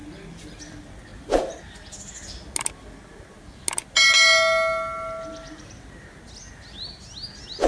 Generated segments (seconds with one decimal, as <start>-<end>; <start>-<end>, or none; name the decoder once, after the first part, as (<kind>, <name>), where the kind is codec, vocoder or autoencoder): 1.1-1.6 (vocoder, BigVGAN v2)